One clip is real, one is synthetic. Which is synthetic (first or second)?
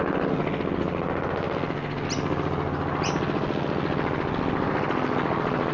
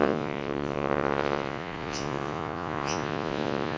second